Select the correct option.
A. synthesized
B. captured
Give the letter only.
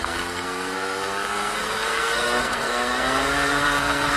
A